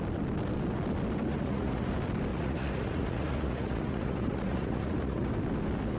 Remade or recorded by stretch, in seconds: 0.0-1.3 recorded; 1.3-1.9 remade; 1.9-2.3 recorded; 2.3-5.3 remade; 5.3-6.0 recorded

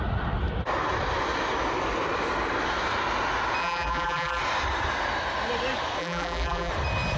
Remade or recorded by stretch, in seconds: 0.0-3.6 recorded; 3.6-4.4 remade; 4.4-6.0 recorded; 6.0-6.7 remade; 6.7-7.2 recorded

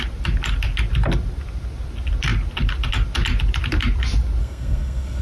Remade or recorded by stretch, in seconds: 0.0-4.4 recorded; 4.4-5.2 remade

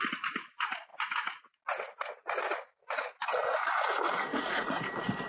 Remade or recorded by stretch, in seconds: 0.0-4.3 recorded; 4.3-4.8 remade; 4.8-5.3 recorded

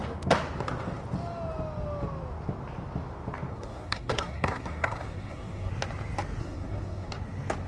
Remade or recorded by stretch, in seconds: 0.0-3.5 recorded; 3.5-5.7 remade; 5.7-6.4 recorded; 6.4-7.1 remade; 7.1-7.7 recorded

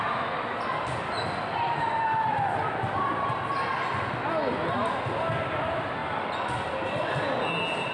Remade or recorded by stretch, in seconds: 0.0-7.9 recorded